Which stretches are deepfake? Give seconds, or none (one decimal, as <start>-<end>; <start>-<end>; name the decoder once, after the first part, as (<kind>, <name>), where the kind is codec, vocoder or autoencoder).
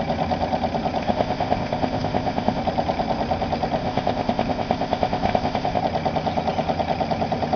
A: 1.0-2.6 (codec, ZipCodec); 3.8-5.8